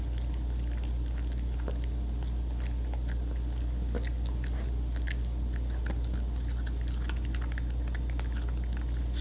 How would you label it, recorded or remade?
recorded